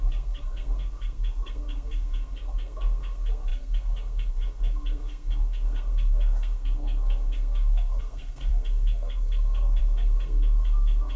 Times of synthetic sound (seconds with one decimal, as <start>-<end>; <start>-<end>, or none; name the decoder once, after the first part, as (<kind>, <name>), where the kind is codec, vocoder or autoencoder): 0.0-11.2 (codec, SNAC)